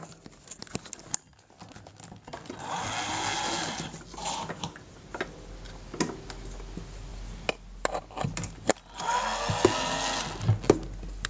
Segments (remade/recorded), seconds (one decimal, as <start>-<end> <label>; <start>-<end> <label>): 0.0-11.3 recorded